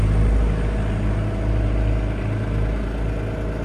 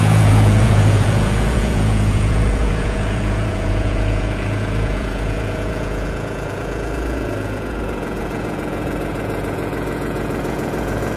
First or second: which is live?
first